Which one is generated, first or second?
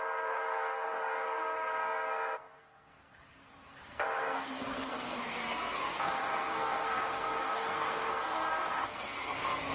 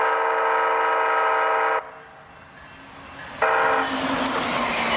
first